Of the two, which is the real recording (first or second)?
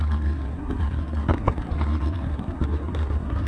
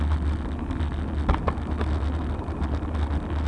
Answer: second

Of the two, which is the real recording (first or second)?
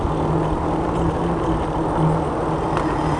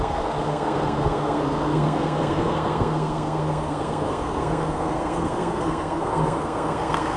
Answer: first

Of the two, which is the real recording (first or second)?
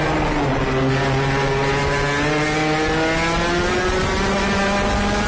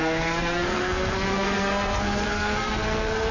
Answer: first